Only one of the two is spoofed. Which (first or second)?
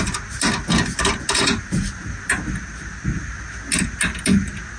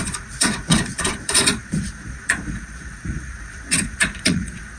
second